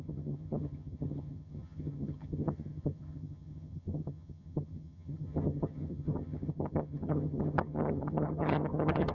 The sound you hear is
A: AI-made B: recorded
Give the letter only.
A